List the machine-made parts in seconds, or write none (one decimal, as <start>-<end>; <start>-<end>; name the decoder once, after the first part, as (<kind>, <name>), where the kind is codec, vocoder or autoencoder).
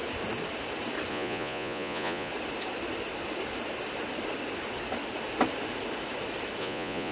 1.1-2.3 (vocoder, Vocos); 6.6-7.1